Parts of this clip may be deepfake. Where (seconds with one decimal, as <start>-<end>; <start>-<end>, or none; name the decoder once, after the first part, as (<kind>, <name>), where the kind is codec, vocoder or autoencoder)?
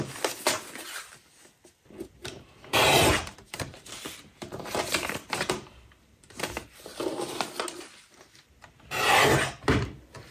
2.2-6.4 (vocoder, BigVGAN v2)